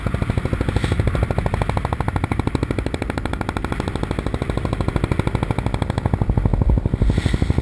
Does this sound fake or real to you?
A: real